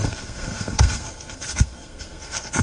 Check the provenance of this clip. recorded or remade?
remade